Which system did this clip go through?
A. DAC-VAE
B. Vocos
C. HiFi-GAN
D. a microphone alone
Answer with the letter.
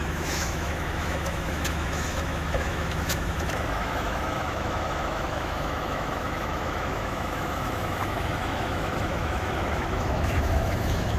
A